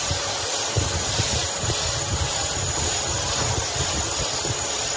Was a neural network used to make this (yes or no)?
no